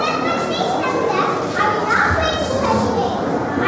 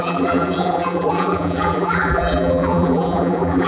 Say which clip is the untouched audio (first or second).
first